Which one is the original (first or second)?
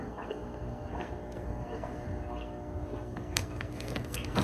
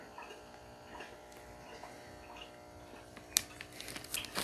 second